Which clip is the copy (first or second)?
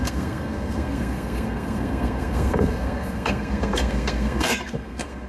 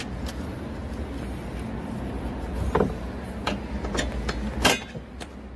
first